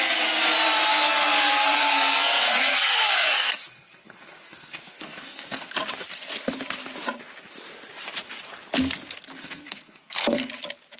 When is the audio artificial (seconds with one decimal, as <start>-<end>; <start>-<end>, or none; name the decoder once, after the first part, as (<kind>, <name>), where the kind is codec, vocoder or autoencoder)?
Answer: 0.9-5.7 (codec, SNAC); 9.4-10.5